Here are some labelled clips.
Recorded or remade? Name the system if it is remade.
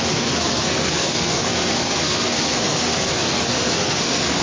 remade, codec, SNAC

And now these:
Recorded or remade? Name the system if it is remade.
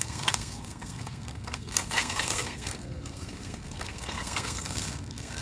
remade, codec, SNAC